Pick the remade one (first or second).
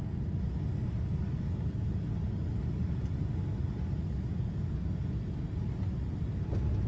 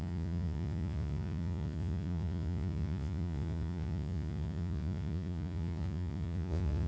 second